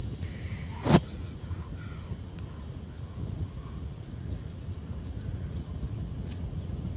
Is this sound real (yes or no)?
no